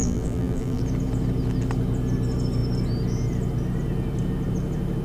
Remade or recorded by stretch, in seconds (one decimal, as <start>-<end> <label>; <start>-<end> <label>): 0.0-0.8 remade; 0.8-5.0 recorded